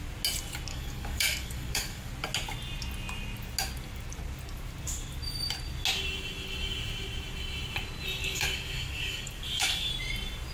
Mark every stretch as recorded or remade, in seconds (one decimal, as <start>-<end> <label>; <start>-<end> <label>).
0.0-0.7 recorded; 0.7-2.1 remade; 2.1-8.2 recorded; 8.2-9.9 remade; 9.9-10.5 recorded